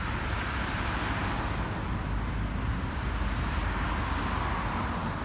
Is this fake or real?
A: real